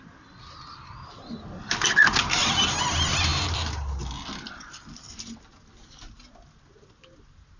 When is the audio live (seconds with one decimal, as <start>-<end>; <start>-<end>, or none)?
0.0-7.6